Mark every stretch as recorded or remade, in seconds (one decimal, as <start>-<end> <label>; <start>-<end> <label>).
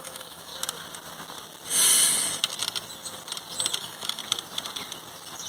0.0-0.5 remade; 0.5-3.8 recorded; 3.8-4.2 remade; 4.2-5.5 recorded